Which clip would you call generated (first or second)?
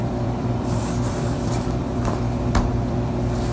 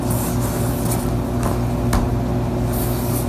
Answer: first